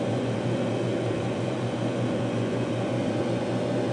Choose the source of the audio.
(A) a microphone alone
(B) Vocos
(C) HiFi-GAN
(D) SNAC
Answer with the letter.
B